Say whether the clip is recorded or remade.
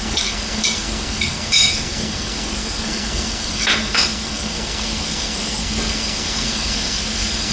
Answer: remade